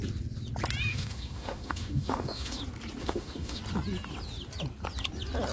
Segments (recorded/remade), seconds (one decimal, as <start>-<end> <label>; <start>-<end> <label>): 0.0-0.9 recorded; 0.9-2.6 remade; 2.6-3.0 recorded; 3.0-3.6 remade; 3.6-5.5 recorded